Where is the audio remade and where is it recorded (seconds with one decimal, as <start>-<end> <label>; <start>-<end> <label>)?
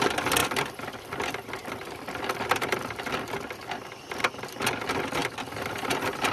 0.0-0.4 recorded; 0.4-4.2 remade; 4.2-5.2 recorded; 5.2-6.3 remade